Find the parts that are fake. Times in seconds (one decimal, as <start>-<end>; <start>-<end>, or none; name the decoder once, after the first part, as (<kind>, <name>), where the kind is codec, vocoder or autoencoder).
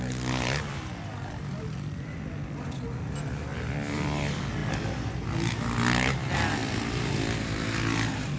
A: none